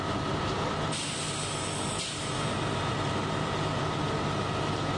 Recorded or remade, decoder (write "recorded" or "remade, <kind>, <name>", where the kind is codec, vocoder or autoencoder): recorded